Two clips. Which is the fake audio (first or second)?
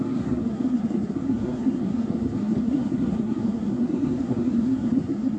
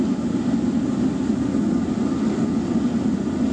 first